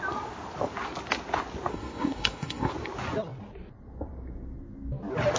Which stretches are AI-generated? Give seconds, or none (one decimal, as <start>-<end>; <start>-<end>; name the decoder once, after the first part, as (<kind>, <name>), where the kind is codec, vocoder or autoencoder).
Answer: 1.7-2.7 (codec, SNAC)